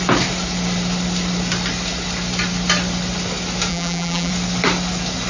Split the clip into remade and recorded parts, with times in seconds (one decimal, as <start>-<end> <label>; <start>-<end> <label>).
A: 0.0-3.7 recorded; 3.7-4.3 remade; 4.3-5.3 recorded